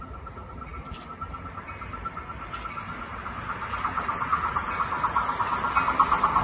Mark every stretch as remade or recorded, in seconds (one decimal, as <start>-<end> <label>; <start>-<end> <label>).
0.0-6.4 recorded